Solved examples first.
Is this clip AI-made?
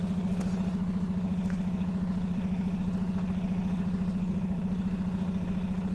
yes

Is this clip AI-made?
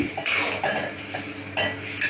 no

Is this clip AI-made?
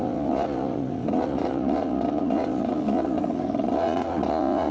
yes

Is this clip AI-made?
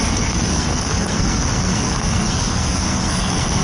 yes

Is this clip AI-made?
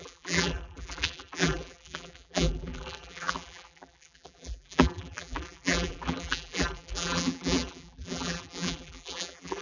yes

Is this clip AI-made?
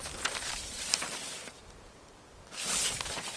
no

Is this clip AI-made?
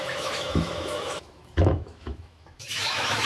yes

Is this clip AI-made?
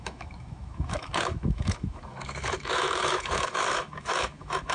yes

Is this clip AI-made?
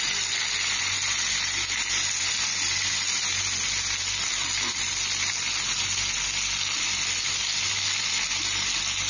no